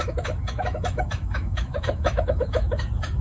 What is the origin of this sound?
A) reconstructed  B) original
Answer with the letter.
A